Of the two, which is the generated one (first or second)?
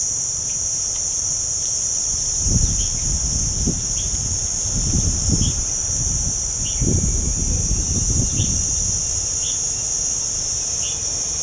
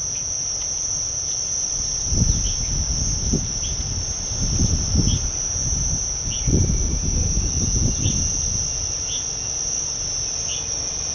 first